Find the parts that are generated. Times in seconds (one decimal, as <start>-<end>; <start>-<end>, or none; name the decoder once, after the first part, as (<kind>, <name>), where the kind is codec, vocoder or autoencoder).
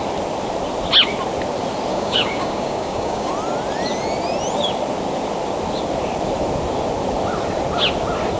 1.9-3.3 (codec, DAC)